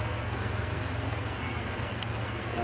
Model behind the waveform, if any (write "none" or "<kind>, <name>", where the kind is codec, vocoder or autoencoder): codec, SNAC